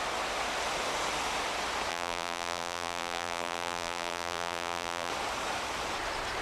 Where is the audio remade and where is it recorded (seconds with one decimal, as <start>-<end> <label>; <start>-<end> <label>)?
0.0-1.9 recorded; 1.9-5.1 remade; 5.1-6.4 recorded